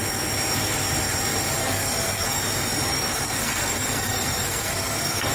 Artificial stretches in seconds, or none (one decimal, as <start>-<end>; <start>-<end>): 1.6-2.4; 2.9-5.3